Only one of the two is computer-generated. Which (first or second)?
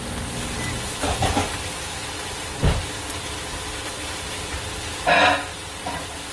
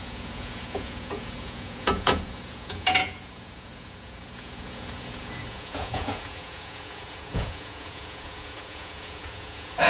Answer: second